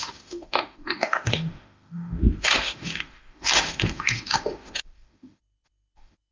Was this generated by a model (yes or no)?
yes